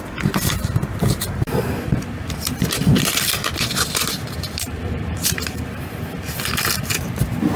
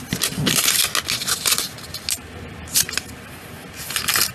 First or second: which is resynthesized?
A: first